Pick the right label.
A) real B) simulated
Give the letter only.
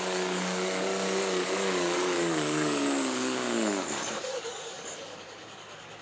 B